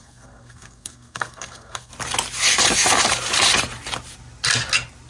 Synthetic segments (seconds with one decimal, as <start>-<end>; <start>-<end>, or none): 0.0-1.9